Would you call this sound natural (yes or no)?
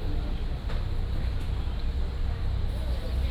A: yes